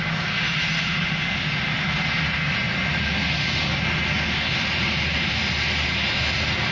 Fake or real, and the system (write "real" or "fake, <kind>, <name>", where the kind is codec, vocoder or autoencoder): real